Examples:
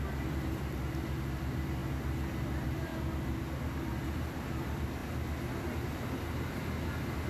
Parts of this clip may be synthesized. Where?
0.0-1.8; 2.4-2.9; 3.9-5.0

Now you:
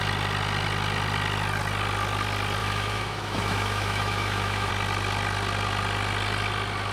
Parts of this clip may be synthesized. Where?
2.6-4.7

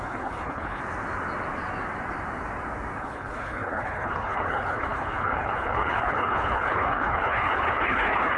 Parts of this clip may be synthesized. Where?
0.0-0.8; 3.0-8.4

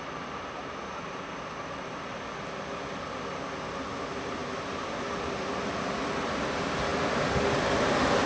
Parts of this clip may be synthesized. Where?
none

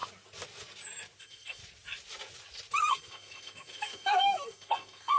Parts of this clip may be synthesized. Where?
1.2-1.6; 2.9-5.2

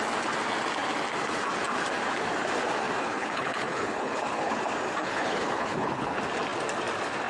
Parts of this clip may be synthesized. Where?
3.0-4.6; 5.0-6.1

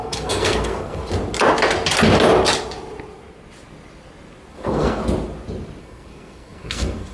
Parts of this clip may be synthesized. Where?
0.0-1.0; 4.5-5.0; 5.8-7.1

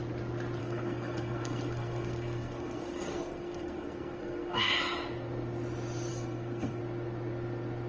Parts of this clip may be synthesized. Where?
0.6-4.7; 6.1-6.8